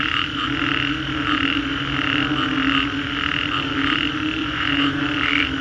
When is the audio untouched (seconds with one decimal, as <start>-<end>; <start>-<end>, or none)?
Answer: 0.0-4.4; 5.0-5.6